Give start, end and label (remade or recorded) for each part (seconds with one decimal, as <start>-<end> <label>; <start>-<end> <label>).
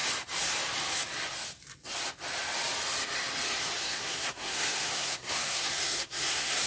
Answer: 0.0-3.8 recorded; 3.8-6.7 remade